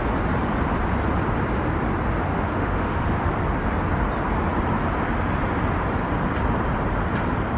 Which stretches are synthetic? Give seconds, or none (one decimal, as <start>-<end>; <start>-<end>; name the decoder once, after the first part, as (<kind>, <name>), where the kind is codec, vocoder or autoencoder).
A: 2.3-3.3 (autoencoder, DAC-VAE)